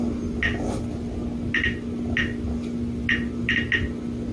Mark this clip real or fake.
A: real